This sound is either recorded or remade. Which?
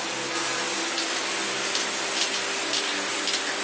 recorded